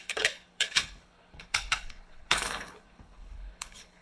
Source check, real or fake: fake